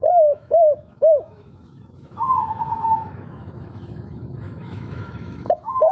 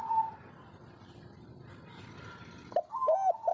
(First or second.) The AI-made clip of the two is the first